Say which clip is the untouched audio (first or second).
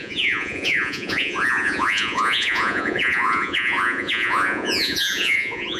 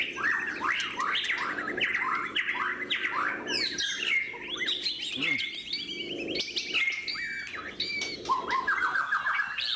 second